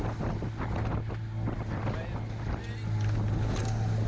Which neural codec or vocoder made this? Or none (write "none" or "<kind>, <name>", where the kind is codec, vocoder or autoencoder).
none